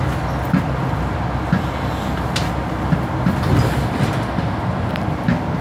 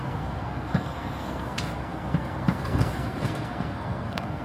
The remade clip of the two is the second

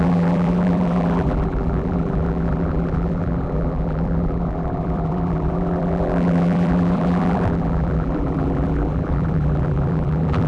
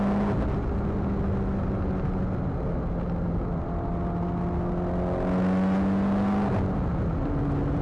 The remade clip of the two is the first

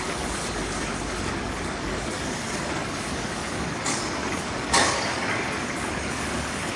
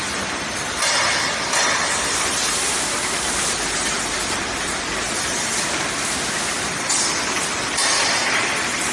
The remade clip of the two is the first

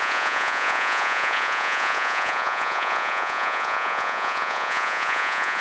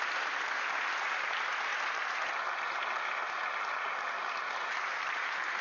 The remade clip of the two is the first